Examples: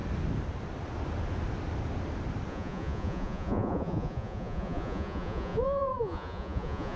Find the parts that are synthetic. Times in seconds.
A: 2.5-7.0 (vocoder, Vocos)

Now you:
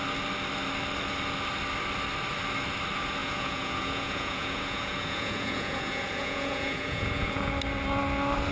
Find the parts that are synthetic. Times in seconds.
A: 3.2-7.5 (vocoder, Vocos)

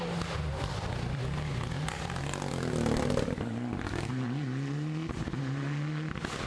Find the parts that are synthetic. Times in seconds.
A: none

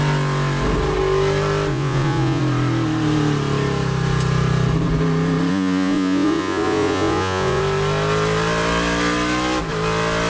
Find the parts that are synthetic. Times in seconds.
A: 1.7-2.4 (vocoder, Vocos); 5.5-7.6

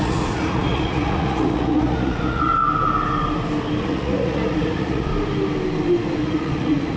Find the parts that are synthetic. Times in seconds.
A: 0.0-2.5 (vocoder, Vocos); 3.8-5.1; 6.2-7.0